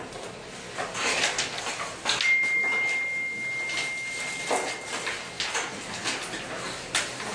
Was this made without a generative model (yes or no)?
yes